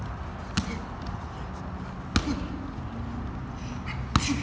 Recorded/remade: recorded